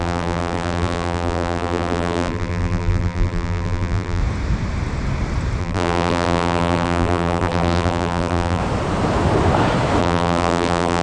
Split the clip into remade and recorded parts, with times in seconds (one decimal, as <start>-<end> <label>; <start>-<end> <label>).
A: 0.0-4.2 remade; 4.2-5.6 recorded; 5.6-8.6 remade; 8.6-10.0 recorded; 10.0-11.0 remade

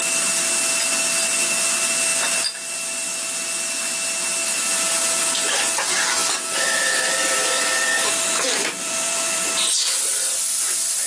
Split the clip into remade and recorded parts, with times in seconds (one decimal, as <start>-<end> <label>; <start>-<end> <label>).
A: 0.0-6.2 recorded; 6.2-10.6 remade; 10.6-11.1 recorded

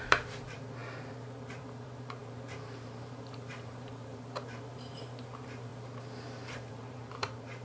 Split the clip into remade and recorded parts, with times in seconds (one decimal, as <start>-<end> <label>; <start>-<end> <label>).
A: 0.0-5.7 remade; 5.7-6.7 recorded; 6.7-7.6 remade

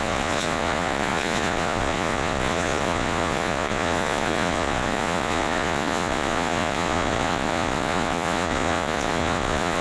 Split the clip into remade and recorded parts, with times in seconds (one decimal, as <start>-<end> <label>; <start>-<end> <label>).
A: 0.0-9.8 remade

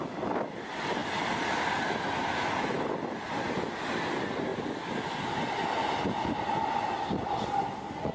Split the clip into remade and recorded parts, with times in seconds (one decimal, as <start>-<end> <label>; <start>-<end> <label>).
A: 0.0-8.1 recorded

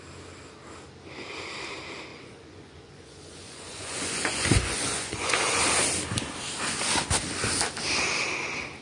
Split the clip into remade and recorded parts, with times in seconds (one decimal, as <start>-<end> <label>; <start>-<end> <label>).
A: 0.0-2.1 recorded; 2.1-5.6 remade; 5.6-8.8 recorded

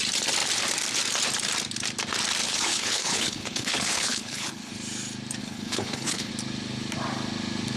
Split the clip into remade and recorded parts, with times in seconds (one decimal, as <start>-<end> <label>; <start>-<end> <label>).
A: 0.0-2.4 recorded; 2.4-4.7 remade; 4.7-5.4 recorded; 5.4-6.3 remade; 6.3-7.8 recorded

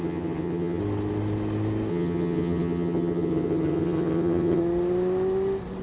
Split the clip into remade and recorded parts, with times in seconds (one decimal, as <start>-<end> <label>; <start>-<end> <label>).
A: 0.0-0.8 remade; 0.8-1.9 recorded; 1.9-4.6 remade; 4.6-5.8 recorded